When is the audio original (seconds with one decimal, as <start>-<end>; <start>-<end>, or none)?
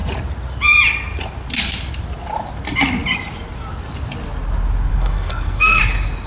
0.0-4.9; 5.8-6.3